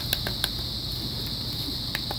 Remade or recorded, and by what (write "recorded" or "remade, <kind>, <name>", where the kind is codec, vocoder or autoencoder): recorded